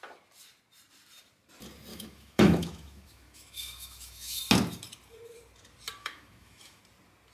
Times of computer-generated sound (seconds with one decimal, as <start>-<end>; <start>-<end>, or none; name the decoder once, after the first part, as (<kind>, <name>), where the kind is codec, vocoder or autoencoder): 1.9-4.4 (autoencoder, DAC-VAE); 6.0-6.8